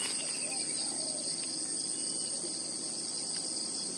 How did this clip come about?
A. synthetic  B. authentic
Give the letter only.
B